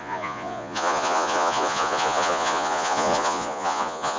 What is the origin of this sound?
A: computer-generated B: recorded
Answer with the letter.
A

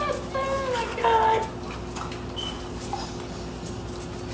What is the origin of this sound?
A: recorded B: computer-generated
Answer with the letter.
A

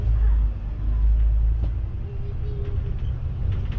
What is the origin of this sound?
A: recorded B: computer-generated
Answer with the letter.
A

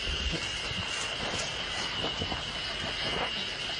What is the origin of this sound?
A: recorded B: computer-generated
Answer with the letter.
A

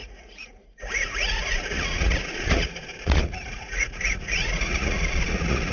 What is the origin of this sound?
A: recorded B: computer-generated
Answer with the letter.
B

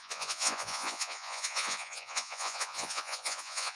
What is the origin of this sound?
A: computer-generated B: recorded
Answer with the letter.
A